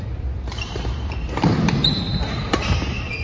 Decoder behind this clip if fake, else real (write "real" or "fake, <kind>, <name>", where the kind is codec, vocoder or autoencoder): fake, vocoder, BigVGAN v2